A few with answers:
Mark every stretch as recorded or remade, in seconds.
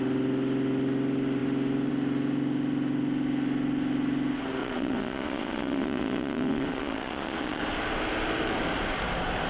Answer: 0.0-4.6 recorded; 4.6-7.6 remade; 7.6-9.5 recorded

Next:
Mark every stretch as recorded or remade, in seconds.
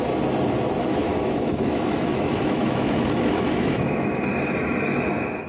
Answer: 0.0-1.0 recorded; 1.0-4.3 remade; 4.3-5.5 recorded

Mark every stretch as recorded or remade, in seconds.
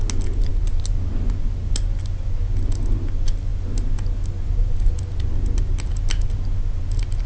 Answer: 0.0-7.3 recorded